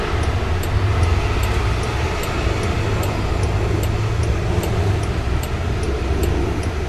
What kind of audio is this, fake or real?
real